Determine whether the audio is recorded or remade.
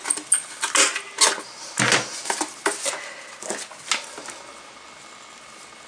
recorded